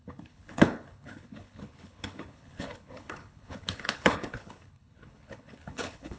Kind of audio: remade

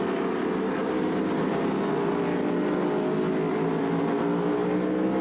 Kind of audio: recorded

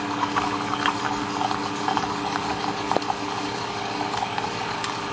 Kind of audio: remade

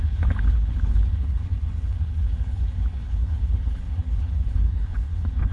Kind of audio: remade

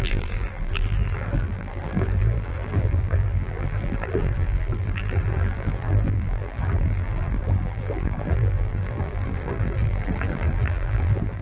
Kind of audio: remade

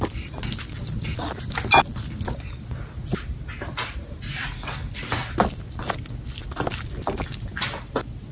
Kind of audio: recorded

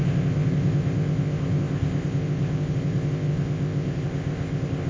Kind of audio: remade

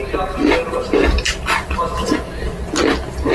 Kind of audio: recorded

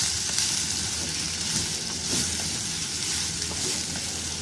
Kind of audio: recorded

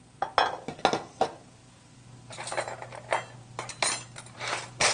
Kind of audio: recorded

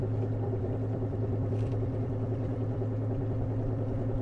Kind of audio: remade